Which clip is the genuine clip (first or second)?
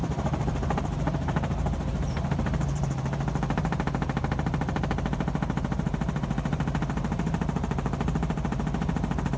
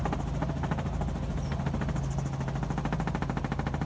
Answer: second